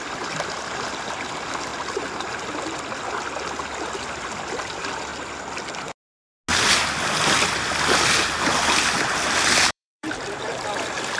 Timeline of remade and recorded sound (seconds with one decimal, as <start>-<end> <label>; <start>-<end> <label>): 0.0-1.7 remade; 1.7-4.0 recorded; 4.0-5.1 remade; 5.1-7.0 recorded; 7.0-11.2 remade